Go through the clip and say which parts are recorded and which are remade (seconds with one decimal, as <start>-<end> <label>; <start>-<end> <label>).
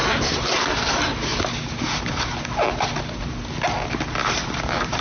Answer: 0.0-1.3 remade; 1.3-4.3 recorded; 4.3-5.0 remade